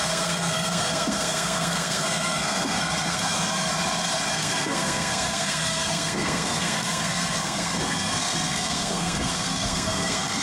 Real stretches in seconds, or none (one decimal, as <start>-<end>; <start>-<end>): 3.7-4.3